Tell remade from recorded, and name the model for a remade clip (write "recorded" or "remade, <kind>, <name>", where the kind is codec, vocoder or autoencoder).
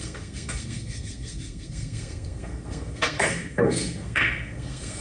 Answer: remade, codec, SNAC